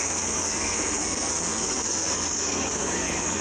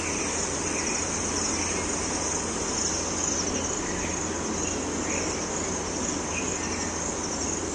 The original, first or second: second